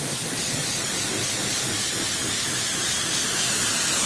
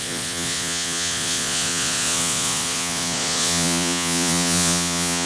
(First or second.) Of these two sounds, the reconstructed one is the second